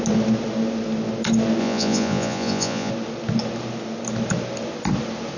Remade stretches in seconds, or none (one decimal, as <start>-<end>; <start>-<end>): 1.6-2.9